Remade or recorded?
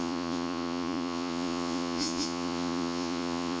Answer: remade